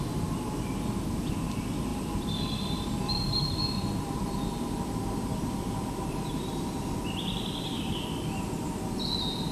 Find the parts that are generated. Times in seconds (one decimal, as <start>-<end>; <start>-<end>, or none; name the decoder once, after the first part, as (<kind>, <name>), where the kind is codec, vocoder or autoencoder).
1.9-6.9 (vocoder, BigVGAN v2)